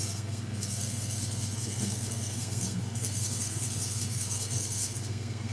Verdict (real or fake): fake